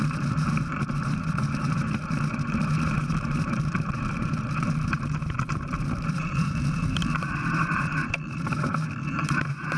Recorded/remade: remade